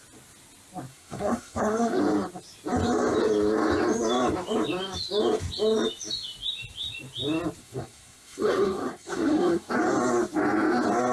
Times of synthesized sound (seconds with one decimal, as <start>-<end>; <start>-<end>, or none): 0.9-2.0; 7.6-9.7